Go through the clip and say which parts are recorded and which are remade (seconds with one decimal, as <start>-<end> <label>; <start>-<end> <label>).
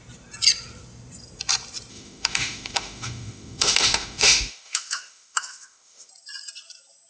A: 0.0-1.9 recorded; 1.9-6.1 remade; 6.1-7.1 recorded